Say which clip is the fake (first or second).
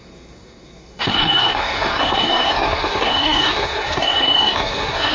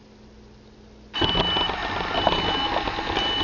first